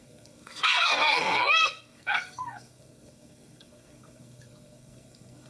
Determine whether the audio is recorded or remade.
remade